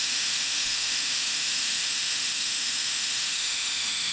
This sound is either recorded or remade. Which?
remade